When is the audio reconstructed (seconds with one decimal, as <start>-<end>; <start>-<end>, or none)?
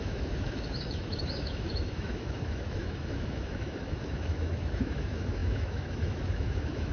0.0-6.9